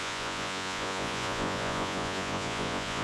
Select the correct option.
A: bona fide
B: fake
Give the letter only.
B